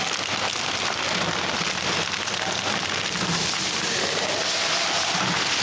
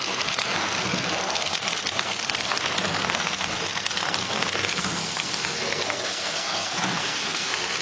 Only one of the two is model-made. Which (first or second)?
second